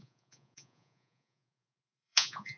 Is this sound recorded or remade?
remade